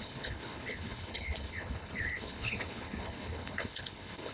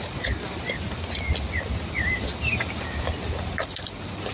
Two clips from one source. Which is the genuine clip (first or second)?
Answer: second